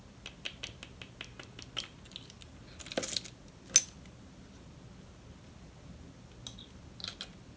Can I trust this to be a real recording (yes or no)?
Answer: yes